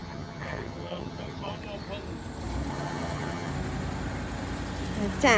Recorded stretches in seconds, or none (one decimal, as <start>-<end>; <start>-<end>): 1.6-2.7; 3.5-5.4